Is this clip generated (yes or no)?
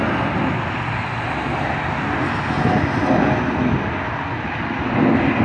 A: no